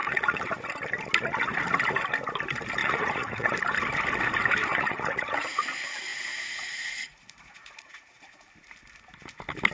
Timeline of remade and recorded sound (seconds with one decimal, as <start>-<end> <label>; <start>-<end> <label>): 0.0-0.7 remade; 0.7-2.8 recorded; 2.8-3.5 remade; 3.5-4.7 recorded; 4.7-5.6 remade; 5.6-6.1 recorded; 6.1-8.4 remade; 8.4-9.7 recorded